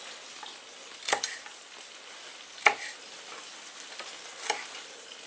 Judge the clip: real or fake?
real